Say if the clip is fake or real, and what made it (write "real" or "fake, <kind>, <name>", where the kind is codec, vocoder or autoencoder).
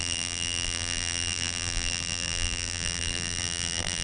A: fake, vocoder, BigVGAN v2